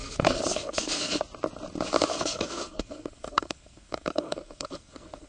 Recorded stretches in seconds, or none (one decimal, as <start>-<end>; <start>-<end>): 1.2-2.1